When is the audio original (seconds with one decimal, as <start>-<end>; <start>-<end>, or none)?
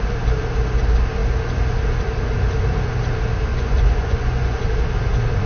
0.0-3.5; 4.6-5.5